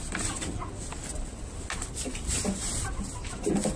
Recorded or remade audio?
recorded